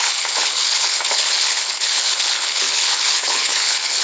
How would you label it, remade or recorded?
remade